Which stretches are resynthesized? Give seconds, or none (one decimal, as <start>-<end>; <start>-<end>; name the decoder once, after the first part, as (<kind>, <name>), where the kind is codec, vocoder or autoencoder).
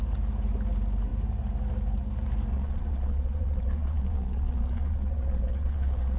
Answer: 2.5-6.2 (vocoder, Vocos)